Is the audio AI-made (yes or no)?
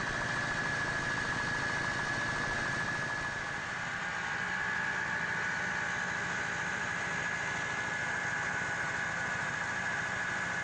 no